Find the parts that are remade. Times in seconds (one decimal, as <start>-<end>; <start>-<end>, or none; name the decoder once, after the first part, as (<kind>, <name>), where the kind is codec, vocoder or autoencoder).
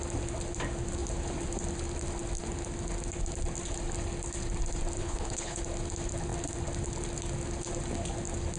5.0-5.6 (codec, HILCodec)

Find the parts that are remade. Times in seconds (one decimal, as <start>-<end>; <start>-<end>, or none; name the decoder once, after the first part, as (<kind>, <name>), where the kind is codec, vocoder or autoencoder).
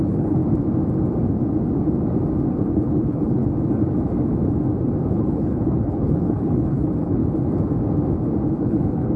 0.0-0.4 (codec, HILCodec); 2.5-3.4; 5.1-7.2; 8.6-9.2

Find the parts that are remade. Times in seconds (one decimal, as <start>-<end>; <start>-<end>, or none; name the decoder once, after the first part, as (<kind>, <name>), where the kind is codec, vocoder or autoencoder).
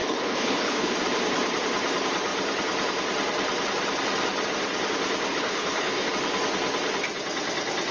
0.0-0.9 (codec, HILCodec); 5.3-6.1